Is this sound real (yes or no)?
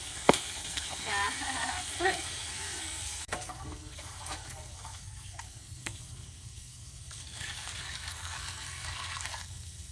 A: no